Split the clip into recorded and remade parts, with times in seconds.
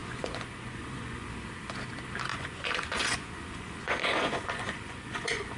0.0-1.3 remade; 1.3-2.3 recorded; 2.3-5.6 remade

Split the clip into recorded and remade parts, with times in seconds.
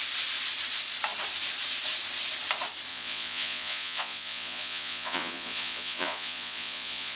0.0-2.9 recorded; 2.9-7.2 remade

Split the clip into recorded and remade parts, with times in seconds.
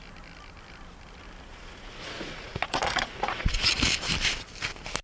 0.0-1.5 recorded; 1.5-3.7 remade; 3.7-5.0 recorded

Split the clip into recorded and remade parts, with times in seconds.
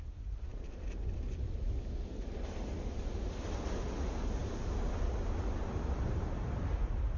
0.0-7.2 recorded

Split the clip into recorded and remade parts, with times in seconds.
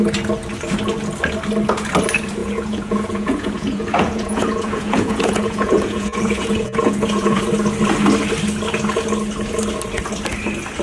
0.0-2.4 recorded; 2.4-7.4 remade; 7.4-10.8 recorded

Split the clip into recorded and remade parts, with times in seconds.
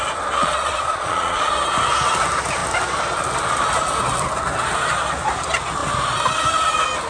0.0-0.4 recorded; 0.4-1.5 remade; 1.5-7.1 recorded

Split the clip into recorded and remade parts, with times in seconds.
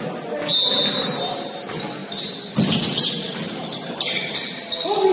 0.0-5.1 recorded